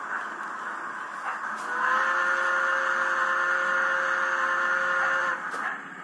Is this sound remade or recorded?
recorded